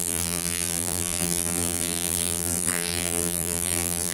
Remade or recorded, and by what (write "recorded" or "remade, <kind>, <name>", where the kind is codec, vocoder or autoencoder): remade, vocoder, BigVGAN v2